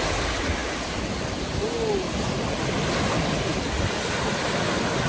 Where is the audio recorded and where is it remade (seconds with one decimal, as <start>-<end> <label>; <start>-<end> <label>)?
0.0-5.1 recorded